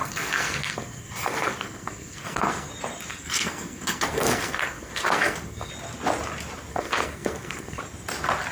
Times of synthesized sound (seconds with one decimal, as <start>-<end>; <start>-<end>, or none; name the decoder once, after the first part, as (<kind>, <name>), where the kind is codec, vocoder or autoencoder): 0.0-2.7 (codec, SNAC); 3.1-5.7; 6.7-7.8